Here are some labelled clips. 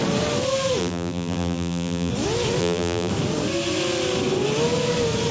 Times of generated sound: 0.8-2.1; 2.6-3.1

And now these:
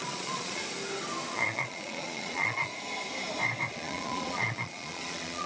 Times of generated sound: 0.0-0.6; 1.3-2.7; 3.7-5.5

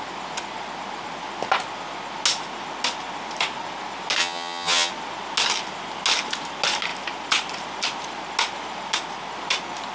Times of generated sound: 4.2-4.9

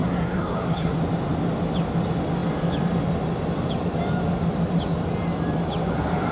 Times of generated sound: 0.0-1.0